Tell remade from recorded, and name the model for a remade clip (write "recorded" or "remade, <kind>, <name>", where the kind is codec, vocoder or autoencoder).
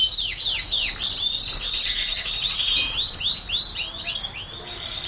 recorded